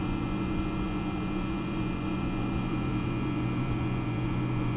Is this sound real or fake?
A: fake